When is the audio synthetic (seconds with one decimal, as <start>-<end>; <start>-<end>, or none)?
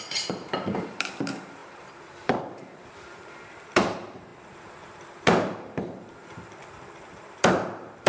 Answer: 0.0-6.6; 7.1-8.1